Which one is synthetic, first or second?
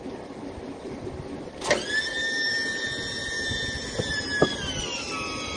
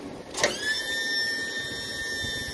first